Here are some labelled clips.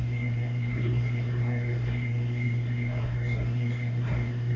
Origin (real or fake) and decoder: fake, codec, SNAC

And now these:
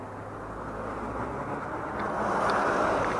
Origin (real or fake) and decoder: real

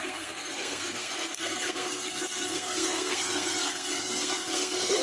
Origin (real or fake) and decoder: fake, codec, SNAC